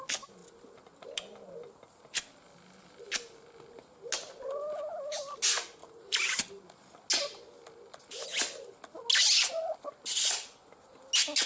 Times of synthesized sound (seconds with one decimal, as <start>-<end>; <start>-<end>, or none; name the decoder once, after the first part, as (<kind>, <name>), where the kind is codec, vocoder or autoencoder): 5.8-6.4 (vocoder, BigVGAN v2)